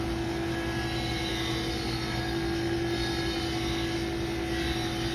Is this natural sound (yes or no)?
yes